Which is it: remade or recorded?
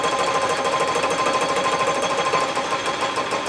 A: remade